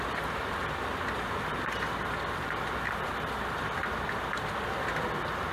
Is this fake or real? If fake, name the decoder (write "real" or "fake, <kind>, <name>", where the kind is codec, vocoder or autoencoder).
fake, vocoder, BigVGAN v2